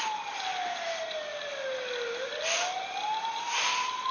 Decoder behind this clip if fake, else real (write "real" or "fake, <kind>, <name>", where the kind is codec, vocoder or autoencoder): real